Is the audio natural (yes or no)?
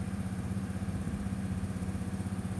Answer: no